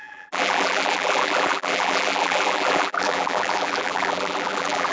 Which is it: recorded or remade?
remade